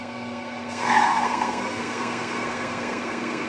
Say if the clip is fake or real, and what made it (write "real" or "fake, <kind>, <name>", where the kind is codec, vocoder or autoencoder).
fake, codec, SNAC